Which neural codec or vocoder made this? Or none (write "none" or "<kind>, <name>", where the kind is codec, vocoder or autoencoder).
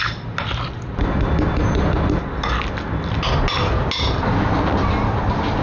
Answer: none